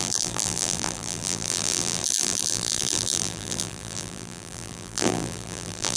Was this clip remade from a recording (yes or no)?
yes